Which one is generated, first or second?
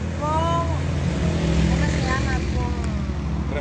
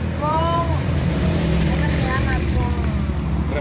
second